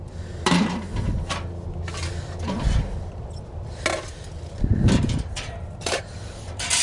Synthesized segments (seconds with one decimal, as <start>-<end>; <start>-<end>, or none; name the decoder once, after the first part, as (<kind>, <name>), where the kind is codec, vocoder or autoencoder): 0.0-0.9 (vocoder, BigVGAN v2); 5.0-6.8